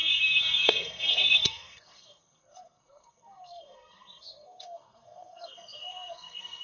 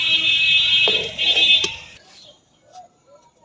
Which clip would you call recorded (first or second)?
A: second